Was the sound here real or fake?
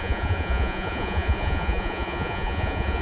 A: fake